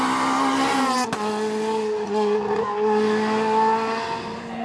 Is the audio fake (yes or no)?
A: no